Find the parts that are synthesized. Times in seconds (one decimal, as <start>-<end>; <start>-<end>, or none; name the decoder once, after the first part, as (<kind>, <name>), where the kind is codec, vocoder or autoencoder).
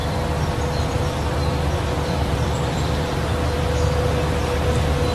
0.0-3.1 (vocoder, BigVGAN v2)